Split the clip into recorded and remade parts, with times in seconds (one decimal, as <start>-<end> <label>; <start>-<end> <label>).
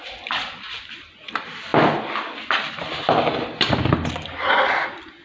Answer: 0.0-5.2 recorded